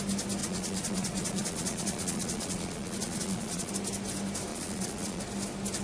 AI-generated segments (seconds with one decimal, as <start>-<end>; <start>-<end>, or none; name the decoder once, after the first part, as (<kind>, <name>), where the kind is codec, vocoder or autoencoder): 0.4-3.7 (vocoder, Vocos); 4.5-5.2